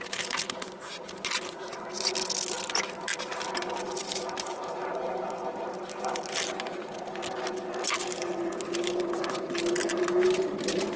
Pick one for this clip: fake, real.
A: real